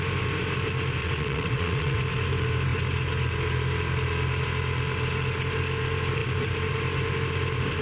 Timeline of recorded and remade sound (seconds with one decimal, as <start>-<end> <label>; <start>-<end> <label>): 0.0-1.0 recorded; 1.0-2.0 remade; 2.0-7.8 recorded